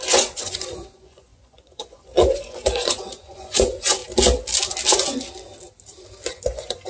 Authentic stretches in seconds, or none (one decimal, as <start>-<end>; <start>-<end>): 4.0-6.3